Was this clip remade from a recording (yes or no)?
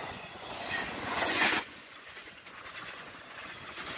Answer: yes